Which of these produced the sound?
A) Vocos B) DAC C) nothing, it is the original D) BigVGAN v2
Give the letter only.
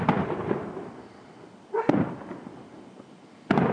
C